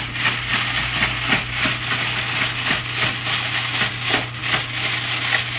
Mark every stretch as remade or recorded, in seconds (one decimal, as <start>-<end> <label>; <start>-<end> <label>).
0.0-5.6 recorded